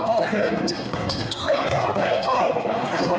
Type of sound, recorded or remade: remade